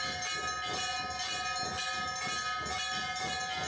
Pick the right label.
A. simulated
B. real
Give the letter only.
B